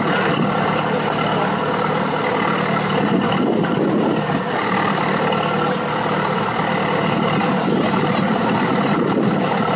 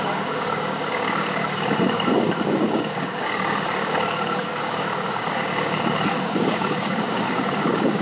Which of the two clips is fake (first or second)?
second